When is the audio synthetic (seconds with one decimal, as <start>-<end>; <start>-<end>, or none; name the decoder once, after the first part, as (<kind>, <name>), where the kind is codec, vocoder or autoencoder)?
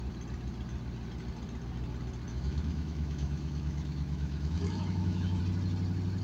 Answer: 2.3-5.4 (autoencoder, DAC-VAE)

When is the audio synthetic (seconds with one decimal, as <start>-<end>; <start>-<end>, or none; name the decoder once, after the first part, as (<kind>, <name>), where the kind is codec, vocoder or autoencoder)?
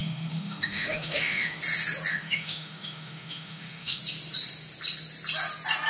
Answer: 0.0-1.6 (autoencoder, DAC-VAE); 2.1-4.0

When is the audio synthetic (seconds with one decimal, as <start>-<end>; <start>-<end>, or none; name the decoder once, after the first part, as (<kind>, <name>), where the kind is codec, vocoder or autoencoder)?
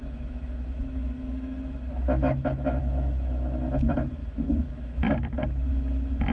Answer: 0.0-6.3 (autoencoder, DAC-VAE)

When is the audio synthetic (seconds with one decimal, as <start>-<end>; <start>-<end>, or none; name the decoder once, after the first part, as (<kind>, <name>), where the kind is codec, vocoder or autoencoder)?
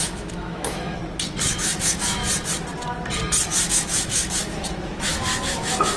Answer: 0.0-1.0 (autoencoder, DAC-VAE); 1.5-2.2; 3.7-6.0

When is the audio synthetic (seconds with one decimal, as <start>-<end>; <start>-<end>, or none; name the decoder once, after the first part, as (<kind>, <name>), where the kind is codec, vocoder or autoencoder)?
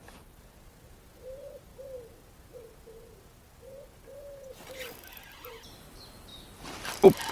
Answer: none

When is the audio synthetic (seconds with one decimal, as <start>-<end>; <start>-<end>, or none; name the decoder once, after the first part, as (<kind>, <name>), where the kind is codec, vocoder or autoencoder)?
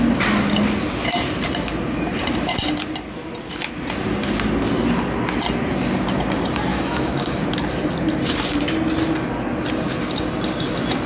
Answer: 6.7-7.4 (autoencoder, DAC-VAE)